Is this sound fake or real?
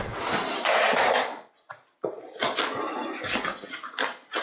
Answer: real